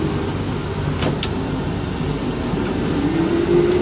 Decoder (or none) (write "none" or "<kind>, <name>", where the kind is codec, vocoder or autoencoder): none